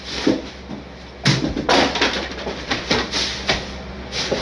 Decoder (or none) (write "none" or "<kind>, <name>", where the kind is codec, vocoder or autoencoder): none